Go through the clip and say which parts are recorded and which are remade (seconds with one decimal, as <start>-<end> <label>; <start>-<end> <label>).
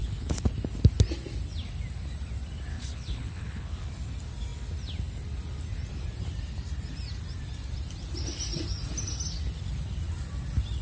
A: 0.0-0.5 remade; 0.5-2.7 recorded; 2.7-3.9 remade; 3.9-10.8 recorded